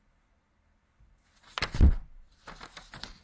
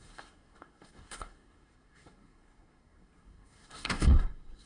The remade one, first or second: second